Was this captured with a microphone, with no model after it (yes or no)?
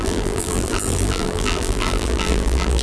no